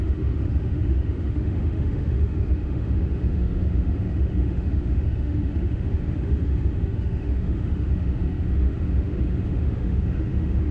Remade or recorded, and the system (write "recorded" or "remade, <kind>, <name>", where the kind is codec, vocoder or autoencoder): remade, autoencoder, DAC-VAE